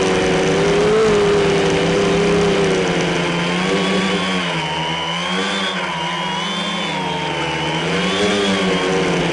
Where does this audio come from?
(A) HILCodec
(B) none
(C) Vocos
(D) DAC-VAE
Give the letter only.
B